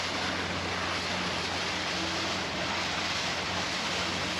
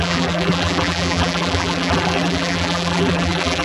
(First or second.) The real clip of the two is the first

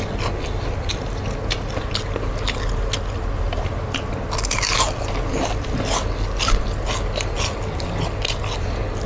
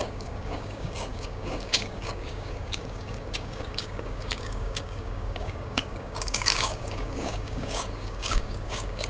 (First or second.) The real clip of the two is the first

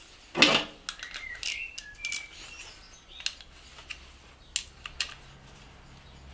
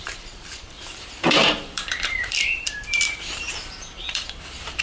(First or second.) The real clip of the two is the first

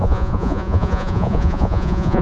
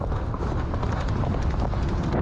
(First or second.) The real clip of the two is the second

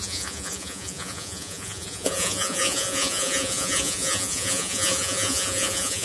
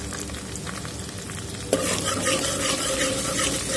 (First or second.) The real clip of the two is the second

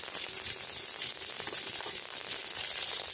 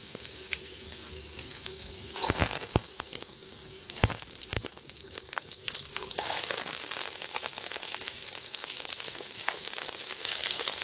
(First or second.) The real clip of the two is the first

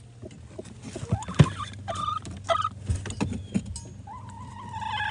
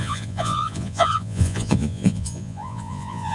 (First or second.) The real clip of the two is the first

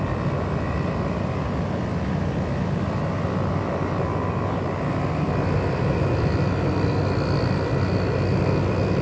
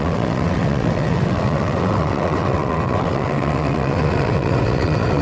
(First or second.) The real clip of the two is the first